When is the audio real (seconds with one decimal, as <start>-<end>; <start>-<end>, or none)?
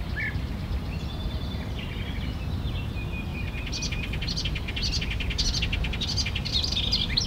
0.0-7.3